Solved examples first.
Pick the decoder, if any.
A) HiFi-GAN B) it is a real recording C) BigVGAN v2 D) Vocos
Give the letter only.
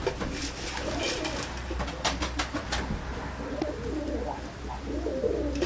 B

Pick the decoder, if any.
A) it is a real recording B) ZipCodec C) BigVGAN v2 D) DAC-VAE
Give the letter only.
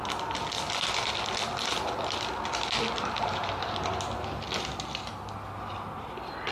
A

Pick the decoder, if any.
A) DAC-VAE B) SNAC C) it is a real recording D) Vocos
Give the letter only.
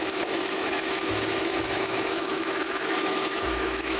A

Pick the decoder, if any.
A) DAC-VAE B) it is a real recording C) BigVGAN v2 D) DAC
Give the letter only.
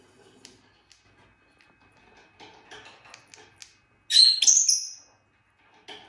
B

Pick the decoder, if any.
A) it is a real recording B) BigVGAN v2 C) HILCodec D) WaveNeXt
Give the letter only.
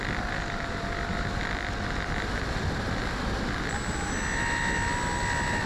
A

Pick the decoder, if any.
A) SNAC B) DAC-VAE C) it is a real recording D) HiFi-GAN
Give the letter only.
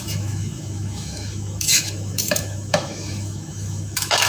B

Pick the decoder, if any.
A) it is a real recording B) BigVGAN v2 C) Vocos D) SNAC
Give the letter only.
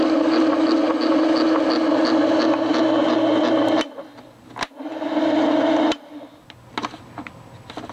A